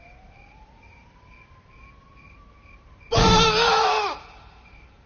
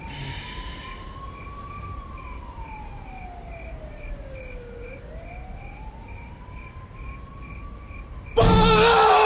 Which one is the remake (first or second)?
first